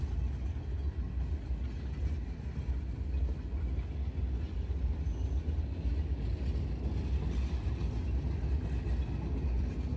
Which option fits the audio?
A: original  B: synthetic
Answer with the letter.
A